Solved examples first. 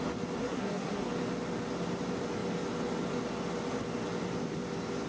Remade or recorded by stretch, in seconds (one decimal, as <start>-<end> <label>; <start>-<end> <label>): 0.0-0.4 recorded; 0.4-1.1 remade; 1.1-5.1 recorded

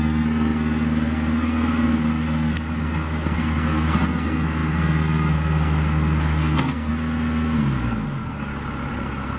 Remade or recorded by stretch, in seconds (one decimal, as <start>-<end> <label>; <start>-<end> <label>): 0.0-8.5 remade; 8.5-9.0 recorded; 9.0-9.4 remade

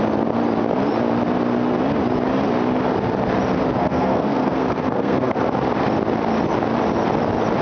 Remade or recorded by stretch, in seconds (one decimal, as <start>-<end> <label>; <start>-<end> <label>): 0.0-3.8 recorded; 3.8-5.4 remade; 5.4-7.6 recorded

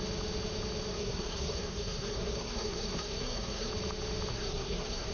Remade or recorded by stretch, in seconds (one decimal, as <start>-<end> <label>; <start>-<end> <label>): 0.0-0.9 recorded; 0.9-3.7 remade; 3.7-4.3 recorded; 4.3-5.1 remade

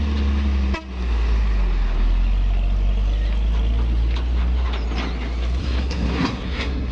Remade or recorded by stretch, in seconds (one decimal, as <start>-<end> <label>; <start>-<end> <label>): 0.0-5.6 recorded; 5.6-6.9 remade